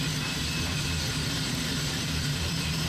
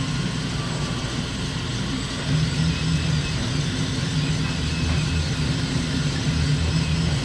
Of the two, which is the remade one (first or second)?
first